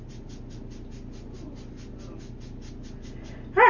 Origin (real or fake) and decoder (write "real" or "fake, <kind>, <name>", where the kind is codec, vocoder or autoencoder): real